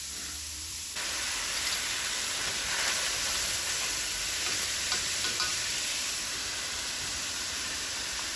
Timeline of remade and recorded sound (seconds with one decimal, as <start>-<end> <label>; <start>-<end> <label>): 0.0-8.4 remade